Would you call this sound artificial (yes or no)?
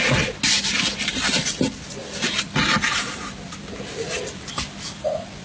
no